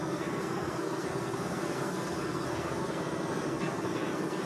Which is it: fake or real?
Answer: fake